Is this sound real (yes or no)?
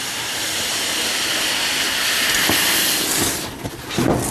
yes